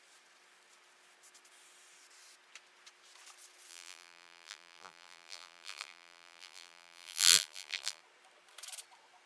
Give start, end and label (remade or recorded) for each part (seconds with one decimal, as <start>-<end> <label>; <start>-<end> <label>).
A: 0.0-3.7 recorded; 3.7-8.0 remade; 8.0-9.3 recorded